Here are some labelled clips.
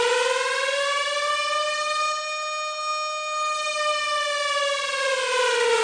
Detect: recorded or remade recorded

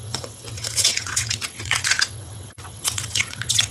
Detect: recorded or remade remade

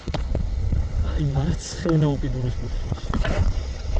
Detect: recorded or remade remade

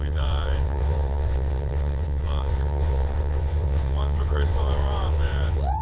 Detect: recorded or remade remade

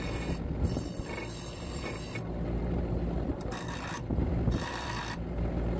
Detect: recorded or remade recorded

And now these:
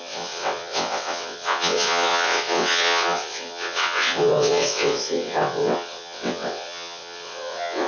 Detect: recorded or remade remade